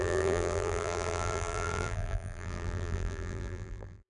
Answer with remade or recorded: remade